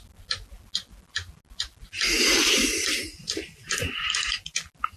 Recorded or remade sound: recorded